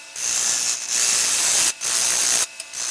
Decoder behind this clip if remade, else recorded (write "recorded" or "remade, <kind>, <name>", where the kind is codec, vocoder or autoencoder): recorded